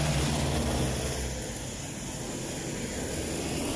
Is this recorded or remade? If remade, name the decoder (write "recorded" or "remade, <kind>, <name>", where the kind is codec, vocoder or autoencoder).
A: recorded